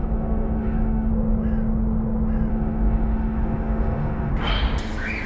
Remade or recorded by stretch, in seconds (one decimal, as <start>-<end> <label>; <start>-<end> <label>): 0.0-1.1 remade; 1.1-2.5 recorded; 2.5-4.3 remade; 4.3-5.3 recorded